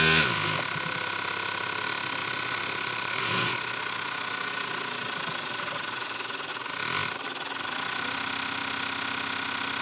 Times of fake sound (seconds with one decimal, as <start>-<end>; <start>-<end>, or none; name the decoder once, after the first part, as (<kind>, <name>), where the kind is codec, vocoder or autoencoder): 2.2-6.5 (vocoder, Vocos)